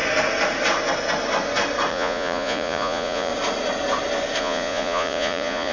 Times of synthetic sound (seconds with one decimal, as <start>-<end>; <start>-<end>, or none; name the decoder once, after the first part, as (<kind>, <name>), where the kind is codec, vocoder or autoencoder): 1.9-3.3 (vocoder, Vocos); 4.4-5.7